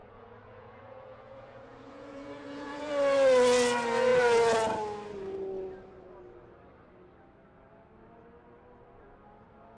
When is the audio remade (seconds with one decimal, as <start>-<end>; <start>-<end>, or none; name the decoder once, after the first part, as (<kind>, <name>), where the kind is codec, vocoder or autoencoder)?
0.0-2.9 (vocoder, Vocos)